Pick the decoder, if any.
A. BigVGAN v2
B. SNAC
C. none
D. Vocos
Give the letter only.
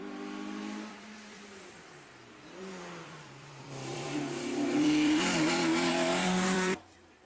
A